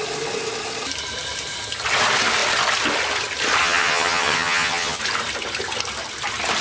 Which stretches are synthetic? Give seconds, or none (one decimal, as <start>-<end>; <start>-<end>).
3.6-5.0